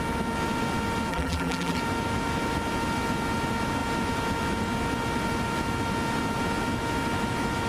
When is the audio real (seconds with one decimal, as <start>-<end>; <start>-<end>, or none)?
0.0-1.1; 1.8-7.7